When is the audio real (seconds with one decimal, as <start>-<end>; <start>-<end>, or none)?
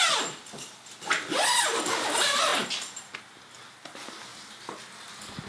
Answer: 0.0-5.5